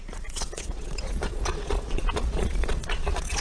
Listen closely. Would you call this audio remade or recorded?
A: remade